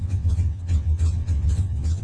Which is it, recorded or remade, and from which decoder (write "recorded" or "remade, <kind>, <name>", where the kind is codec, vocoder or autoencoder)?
remade, vocoder, WaveNeXt